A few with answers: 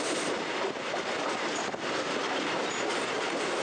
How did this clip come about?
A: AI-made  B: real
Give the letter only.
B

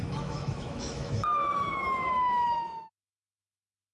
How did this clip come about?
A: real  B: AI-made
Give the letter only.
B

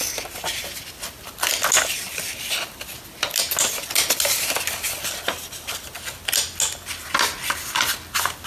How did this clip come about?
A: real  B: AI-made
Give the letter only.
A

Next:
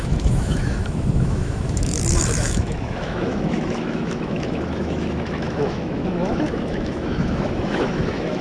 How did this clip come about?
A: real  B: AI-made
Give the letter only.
B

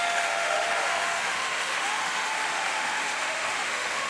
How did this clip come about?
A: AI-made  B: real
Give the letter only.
A